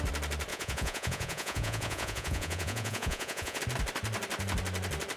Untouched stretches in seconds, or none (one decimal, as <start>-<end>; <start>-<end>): 0.0-0.5; 3.6-5.2